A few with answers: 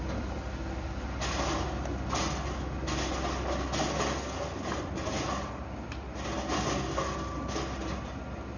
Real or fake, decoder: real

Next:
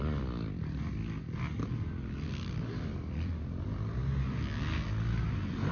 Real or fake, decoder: real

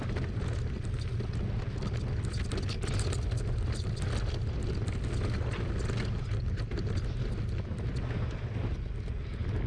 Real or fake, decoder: real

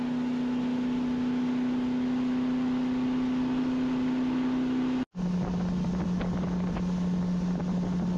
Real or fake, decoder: real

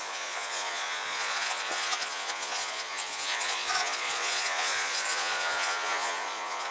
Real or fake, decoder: fake, vocoder, Vocos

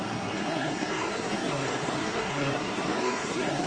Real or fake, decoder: fake, codec, SNAC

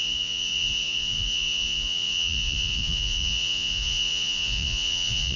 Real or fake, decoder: fake, vocoder, Vocos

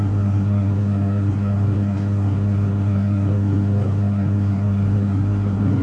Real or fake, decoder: fake, codec, SNAC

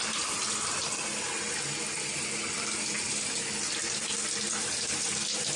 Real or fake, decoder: real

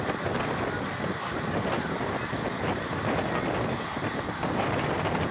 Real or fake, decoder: real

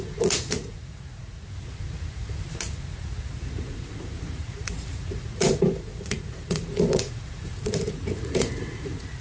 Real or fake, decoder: fake, vocoder, Vocos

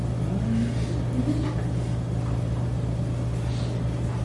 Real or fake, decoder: real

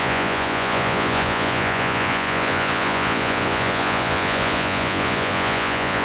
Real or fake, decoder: fake, vocoder, Vocos